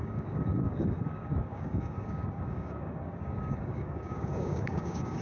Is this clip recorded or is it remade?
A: remade